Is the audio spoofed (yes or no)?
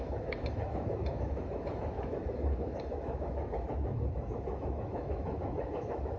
yes